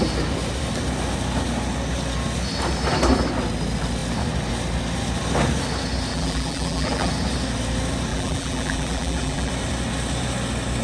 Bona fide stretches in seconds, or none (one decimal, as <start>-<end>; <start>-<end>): 0.0-6.1; 7.1-8.1; 9.5-10.8